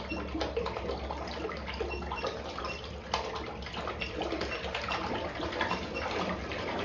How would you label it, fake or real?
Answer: real